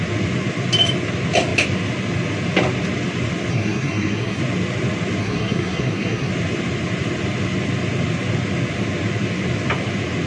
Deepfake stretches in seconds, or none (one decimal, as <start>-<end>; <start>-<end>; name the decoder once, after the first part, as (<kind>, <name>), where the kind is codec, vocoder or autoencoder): 3.5-4.4 (codec, SNAC); 5.2-6.3